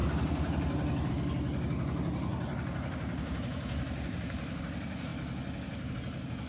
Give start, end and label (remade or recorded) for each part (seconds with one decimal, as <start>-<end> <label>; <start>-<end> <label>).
0.0-1.1 remade; 1.1-2.3 recorded; 2.3-4.6 remade; 4.6-6.5 recorded

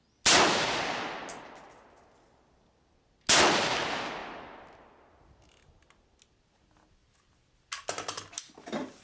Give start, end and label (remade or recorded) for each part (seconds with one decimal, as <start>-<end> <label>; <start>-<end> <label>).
0.0-9.0 recorded

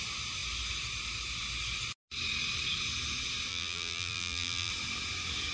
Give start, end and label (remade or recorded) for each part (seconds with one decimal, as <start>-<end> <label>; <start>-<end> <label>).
0.0-3.5 recorded; 3.5-4.7 remade; 4.7-5.5 recorded

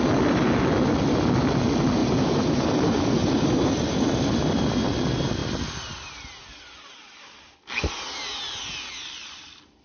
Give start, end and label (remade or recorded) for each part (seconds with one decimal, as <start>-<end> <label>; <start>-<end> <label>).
0.0-2.0 recorded; 2.0-3.9 remade; 3.9-9.8 recorded

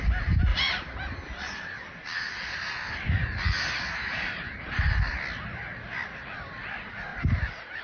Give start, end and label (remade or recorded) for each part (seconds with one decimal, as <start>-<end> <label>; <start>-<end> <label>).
0.0-0.5 recorded; 0.5-5.2 remade; 5.2-7.1 recorded; 7.1-7.8 remade

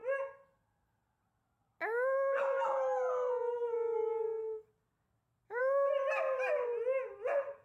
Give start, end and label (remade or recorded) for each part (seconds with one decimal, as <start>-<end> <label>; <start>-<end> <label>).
0.0-7.6 recorded

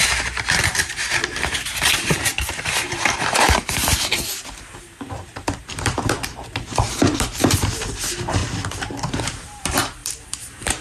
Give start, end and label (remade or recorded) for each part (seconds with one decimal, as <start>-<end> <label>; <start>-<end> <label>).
0.0-8.4 remade; 8.4-9.1 recorded; 9.1-10.8 remade